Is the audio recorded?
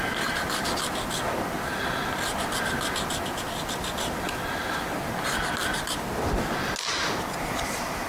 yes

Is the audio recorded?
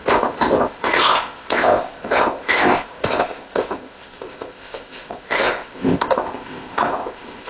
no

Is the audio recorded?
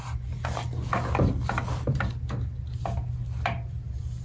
yes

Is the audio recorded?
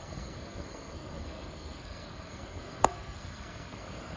no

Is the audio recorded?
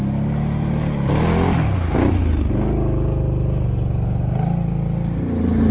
yes